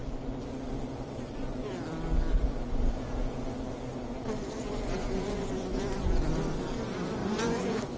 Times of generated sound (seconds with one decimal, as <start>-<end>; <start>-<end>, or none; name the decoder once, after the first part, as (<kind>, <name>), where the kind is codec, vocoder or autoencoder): 4.6-6.1 (vocoder, Vocos); 7.2-8.0